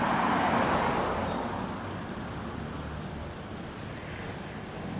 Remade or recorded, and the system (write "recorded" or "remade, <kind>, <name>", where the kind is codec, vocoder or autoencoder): recorded